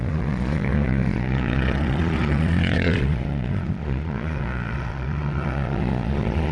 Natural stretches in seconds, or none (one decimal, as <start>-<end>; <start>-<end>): none